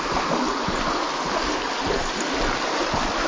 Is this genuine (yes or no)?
yes